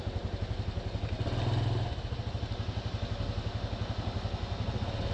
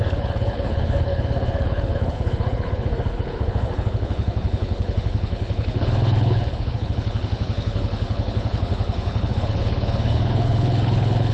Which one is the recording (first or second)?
first